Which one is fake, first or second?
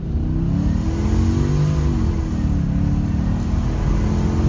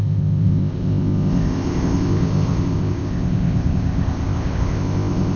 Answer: second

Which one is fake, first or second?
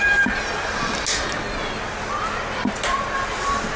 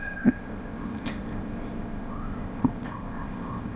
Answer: second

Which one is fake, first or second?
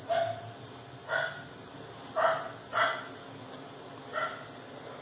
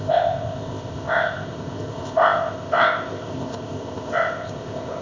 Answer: second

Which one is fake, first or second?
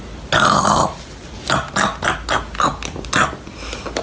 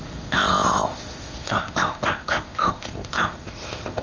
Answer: second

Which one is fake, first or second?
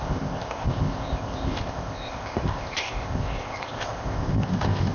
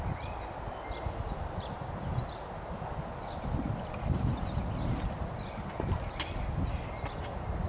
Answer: first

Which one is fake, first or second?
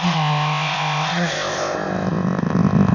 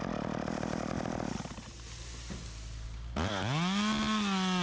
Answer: first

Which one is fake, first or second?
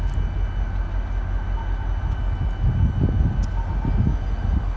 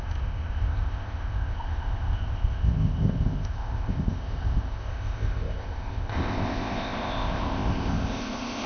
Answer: second